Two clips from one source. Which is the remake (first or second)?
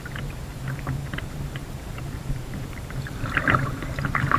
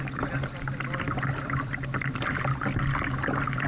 first